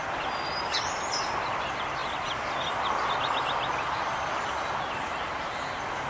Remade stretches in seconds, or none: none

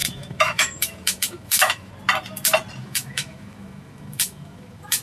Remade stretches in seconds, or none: 0.0-1.9 (autoencoder, DAC-VAE); 2.8-5.0

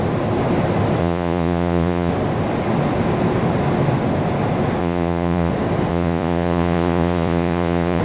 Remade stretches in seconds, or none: 1.0-2.1 (vocoder, Vocos); 4.8-5.5; 5.9-8.0